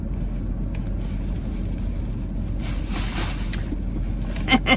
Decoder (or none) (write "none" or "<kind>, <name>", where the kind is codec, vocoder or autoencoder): none